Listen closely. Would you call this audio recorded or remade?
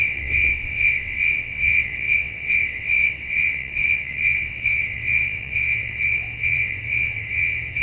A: remade